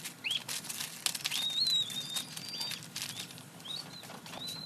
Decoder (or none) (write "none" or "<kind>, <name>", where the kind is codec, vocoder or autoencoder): none